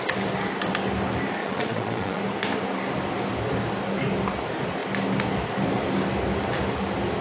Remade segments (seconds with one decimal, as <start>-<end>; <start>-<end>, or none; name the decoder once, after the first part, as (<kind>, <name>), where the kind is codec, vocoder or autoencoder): 1.4-2.2 (vocoder, Vocos)